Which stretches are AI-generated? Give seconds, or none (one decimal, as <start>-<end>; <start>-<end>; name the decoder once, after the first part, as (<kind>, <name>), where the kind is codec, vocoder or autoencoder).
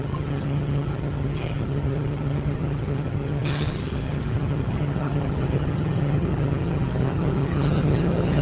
0.0-8.4 (vocoder, HiFi-GAN)